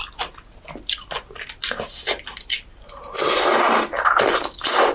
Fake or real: real